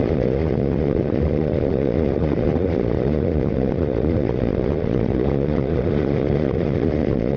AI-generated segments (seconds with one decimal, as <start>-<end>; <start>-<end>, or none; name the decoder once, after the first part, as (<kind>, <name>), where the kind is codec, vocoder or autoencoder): 0.0-7.4 (vocoder, Vocos)